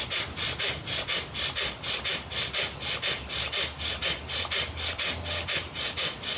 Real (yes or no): yes